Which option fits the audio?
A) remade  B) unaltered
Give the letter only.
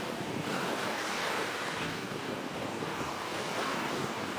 A